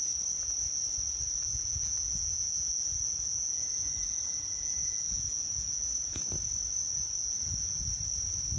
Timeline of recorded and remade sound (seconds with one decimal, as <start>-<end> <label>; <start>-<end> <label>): 0.0-1.4 recorded; 1.4-5.8 remade; 5.8-7.2 recorded; 7.2-7.8 remade; 7.8-8.6 recorded